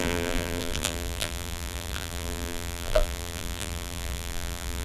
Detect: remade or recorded remade